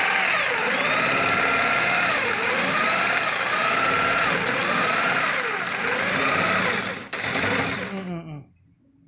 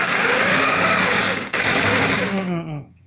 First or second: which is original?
first